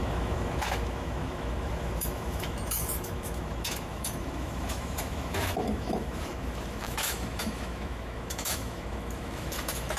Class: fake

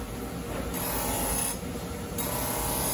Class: real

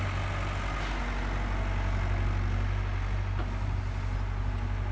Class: real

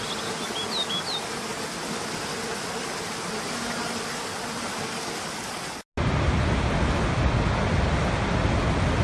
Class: real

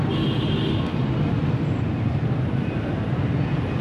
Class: real